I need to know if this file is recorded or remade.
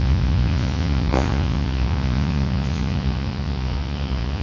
remade